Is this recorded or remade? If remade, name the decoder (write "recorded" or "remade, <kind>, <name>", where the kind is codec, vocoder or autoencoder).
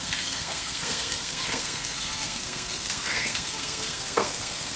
remade, codec, SNAC